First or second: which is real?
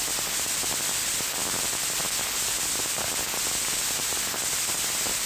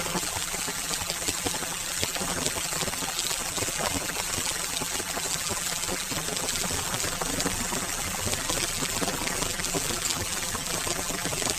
first